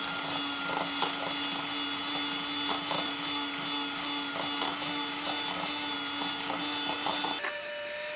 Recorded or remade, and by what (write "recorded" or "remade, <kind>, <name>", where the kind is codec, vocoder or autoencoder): recorded